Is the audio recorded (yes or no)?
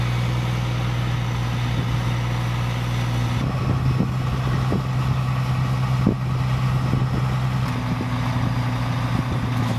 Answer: yes